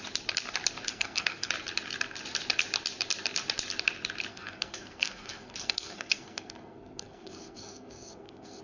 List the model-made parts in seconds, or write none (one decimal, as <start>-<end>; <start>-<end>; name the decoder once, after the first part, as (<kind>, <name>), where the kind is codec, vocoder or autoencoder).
0.9-1.5 (codec, SNAC); 4.3-8.6